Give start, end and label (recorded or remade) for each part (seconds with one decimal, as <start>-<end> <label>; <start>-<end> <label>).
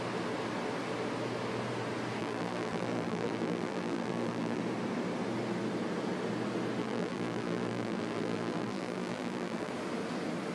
0.0-2.2 recorded; 2.2-4.6 remade; 4.6-6.8 recorded; 6.8-9.7 remade; 9.7-10.5 recorded